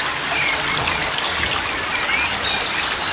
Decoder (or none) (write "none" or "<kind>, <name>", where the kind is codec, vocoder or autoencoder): none